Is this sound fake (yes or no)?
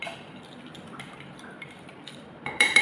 yes